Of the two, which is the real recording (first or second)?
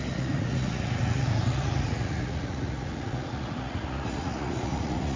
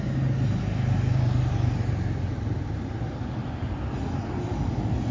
second